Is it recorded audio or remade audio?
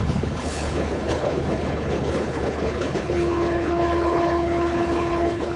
remade